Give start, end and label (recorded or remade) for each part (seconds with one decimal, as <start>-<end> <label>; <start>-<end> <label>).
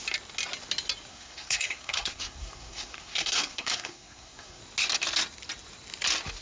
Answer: 0.0-1.1 recorded; 1.1-4.6 remade; 4.6-6.4 recorded